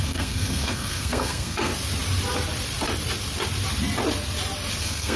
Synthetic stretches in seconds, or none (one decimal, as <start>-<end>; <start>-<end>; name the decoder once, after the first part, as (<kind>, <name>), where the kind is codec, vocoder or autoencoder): 0.0-1.7 (codec, SNAC); 4.8-5.2

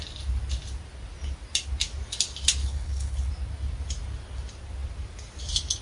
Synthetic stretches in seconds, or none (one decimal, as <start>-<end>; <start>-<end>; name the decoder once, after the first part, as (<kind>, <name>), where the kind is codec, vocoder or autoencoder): 2.6-3.3 (codec, HILCodec)

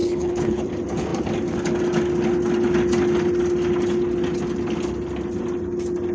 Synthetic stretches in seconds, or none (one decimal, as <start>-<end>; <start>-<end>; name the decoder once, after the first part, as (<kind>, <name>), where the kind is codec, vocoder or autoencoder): 0.0-0.6 (codec, HILCodec)

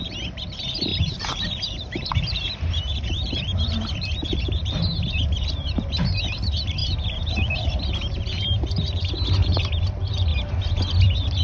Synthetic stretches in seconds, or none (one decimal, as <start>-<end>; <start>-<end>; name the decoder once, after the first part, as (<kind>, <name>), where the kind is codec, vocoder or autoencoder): 0.0-10.3 (vocoder, BigVGAN v2); 11.0-11.4

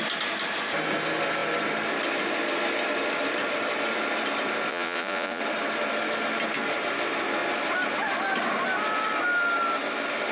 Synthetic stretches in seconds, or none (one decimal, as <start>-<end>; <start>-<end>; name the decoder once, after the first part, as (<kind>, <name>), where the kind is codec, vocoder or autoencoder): 4.7-5.4 (vocoder, Vocos)

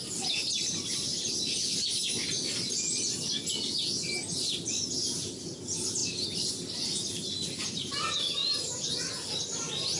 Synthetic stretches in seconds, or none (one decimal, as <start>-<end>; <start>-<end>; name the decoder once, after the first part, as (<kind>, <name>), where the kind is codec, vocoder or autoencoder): none

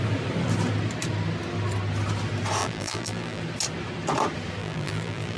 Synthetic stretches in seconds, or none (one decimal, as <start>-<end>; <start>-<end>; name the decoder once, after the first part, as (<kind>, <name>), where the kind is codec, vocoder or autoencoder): 2.6-3.4 (vocoder, BigVGAN v2); 4.6-5.4